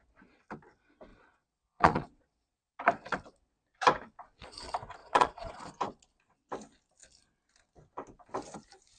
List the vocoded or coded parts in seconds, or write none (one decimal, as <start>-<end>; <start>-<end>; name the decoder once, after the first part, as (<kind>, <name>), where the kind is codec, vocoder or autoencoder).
1.1-2.7 (vocoder, Vocos); 5.0-5.6